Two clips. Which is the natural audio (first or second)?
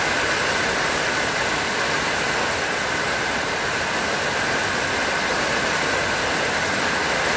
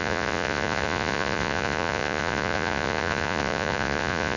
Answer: first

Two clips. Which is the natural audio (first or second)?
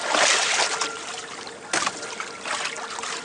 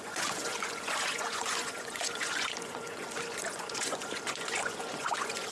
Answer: first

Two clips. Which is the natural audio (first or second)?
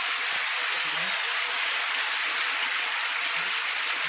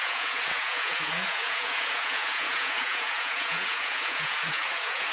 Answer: first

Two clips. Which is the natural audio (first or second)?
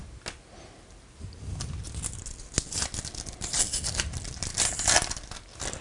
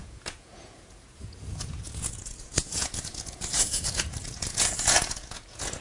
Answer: first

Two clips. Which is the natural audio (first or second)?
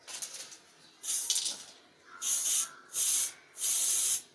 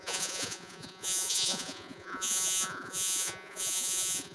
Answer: first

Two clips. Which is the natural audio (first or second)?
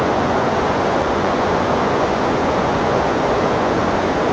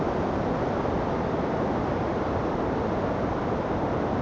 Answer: second